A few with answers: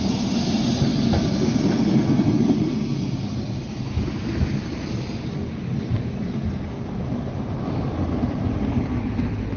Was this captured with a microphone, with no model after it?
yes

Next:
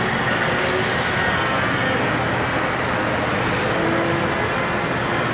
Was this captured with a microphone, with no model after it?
yes